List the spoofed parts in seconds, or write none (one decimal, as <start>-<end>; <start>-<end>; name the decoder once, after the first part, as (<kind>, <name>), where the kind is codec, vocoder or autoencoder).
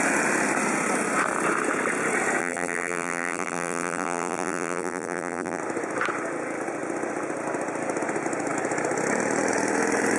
2.4-5.6 (vocoder, BigVGAN v2)